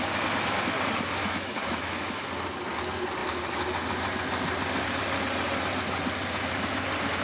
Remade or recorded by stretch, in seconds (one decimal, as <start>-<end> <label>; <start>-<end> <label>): 0.0-1.2 recorded; 1.2-2.3 remade; 2.3-7.2 recorded

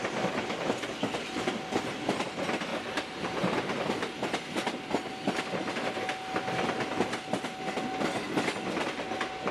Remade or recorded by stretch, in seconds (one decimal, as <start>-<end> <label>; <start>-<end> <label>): 0.0-2.7 recorded; 2.7-5.7 remade; 5.7-9.5 recorded

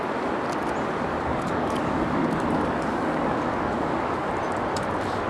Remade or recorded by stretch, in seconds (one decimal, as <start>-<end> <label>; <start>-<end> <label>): 0.0-1.1 recorded; 1.1-4.3 remade; 4.3-5.3 recorded